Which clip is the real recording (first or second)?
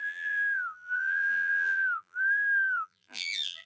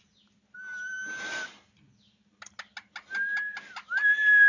second